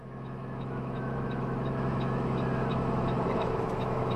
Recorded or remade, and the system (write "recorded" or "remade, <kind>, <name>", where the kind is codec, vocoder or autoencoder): remade, autoencoder, DAC-VAE